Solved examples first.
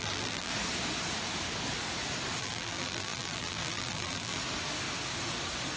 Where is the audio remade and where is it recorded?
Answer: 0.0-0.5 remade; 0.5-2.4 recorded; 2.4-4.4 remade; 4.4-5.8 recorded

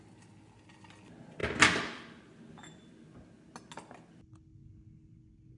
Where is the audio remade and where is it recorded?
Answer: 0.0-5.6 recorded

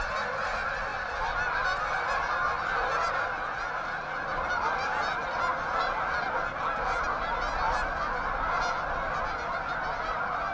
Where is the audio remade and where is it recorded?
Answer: 0.0-10.5 recorded